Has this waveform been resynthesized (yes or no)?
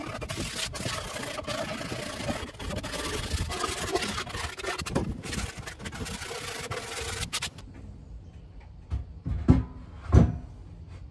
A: no